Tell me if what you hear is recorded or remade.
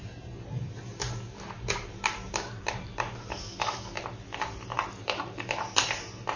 remade